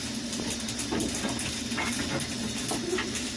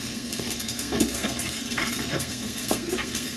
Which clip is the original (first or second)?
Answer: first